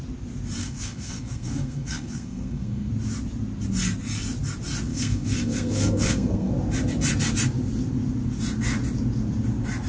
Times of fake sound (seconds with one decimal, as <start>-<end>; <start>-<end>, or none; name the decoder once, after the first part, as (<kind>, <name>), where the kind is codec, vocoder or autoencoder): 0.6-2.9 (codec, SNAC); 4.9-6.5